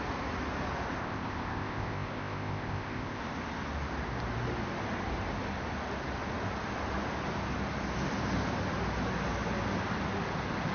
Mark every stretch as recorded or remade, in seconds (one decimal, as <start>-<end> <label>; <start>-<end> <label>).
0.0-1.0 recorded; 1.0-3.2 remade; 3.2-10.7 recorded